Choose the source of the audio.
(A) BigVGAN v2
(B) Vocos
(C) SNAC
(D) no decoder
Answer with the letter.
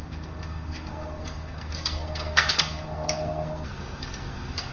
C